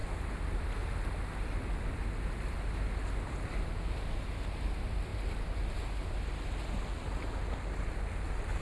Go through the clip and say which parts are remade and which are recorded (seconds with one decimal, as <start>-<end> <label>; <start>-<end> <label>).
0.0-8.6 recorded

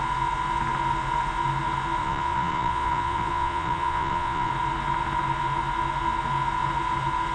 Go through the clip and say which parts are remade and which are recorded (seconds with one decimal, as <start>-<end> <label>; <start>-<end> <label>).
0.0-2.0 recorded; 2.0-4.5 remade; 4.5-7.3 recorded